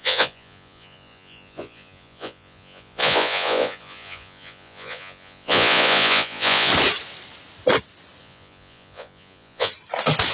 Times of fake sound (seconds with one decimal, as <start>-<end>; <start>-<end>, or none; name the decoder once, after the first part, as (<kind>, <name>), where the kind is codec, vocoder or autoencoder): 0.0-6.7 (vocoder, Vocos); 8.2-9.7